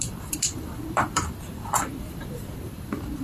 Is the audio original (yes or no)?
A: no